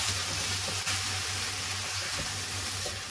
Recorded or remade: recorded